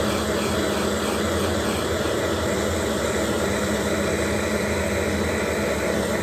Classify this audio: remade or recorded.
recorded